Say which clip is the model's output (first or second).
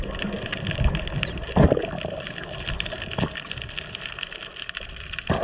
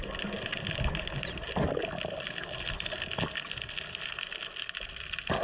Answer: first